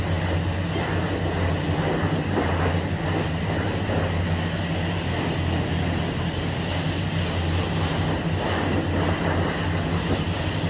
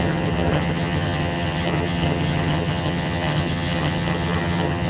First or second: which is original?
first